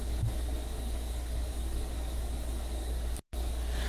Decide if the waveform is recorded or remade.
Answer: remade